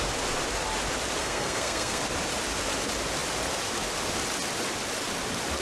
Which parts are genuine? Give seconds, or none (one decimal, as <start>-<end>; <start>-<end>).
0.0-1.2; 2.0-5.6